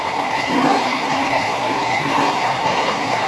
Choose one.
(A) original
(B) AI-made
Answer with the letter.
B